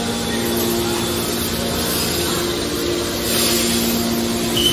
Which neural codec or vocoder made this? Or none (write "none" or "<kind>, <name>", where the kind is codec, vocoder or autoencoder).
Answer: none